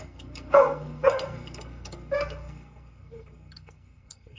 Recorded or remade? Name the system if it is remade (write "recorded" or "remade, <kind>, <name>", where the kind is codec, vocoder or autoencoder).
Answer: remade, codec, SNAC